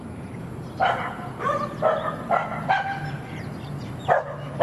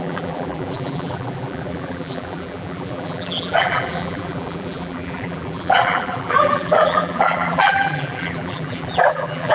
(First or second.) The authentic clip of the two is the first